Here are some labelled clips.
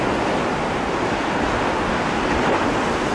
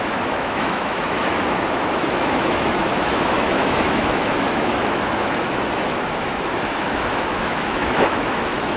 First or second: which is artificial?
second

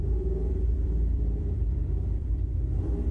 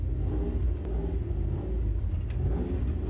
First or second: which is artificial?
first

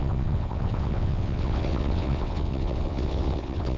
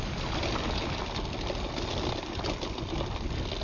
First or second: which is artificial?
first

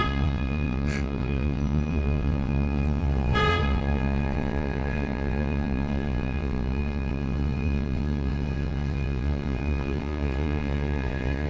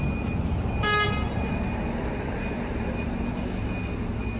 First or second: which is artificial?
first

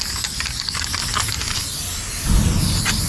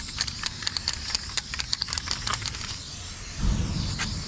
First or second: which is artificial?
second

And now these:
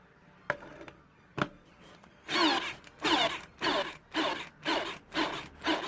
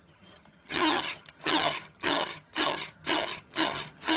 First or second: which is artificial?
second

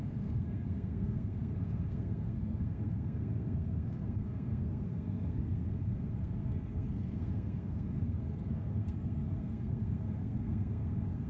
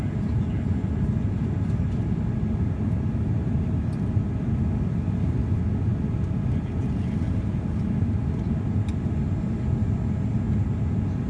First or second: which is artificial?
first